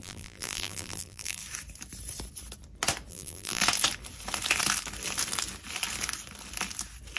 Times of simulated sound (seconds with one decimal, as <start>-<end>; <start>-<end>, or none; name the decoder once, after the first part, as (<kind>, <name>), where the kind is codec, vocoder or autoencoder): 0.0-1.4 (vocoder, BigVGAN v2); 3.1-3.6